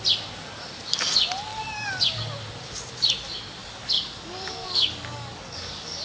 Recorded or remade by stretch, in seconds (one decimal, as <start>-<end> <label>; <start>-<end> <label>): 0.0-1.5 recorded; 1.5-2.2 remade; 2.2-3.6 recorded; 3.6-6.0 remade

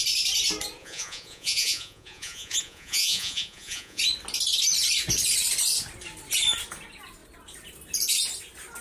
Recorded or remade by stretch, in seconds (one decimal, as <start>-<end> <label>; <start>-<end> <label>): 0.0-0.8 recorded; 0.8-4.0 remade; 4.0-8.8 recorded

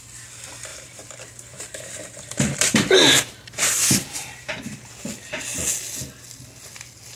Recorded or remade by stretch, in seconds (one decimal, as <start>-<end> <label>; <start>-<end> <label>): 0.0-0.7 recorded; 0.7-4.9 remade; 4.9-7.2 recorded

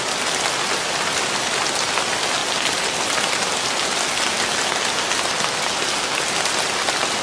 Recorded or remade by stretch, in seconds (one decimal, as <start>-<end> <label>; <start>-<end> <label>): 0.0-7.2 recorded